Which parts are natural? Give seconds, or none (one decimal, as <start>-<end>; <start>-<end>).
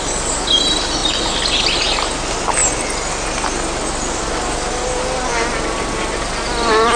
0.0-7.0